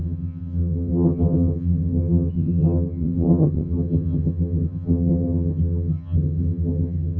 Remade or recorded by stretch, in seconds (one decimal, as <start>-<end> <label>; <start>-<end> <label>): 0.0-7.2 remade